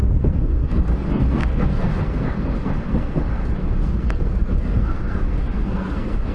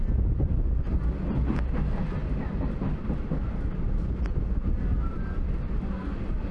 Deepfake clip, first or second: first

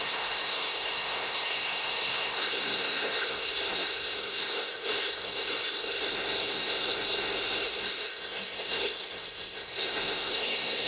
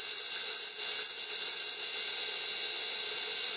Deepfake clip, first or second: first